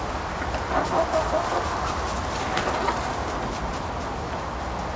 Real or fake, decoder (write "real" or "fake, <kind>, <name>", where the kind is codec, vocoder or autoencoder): real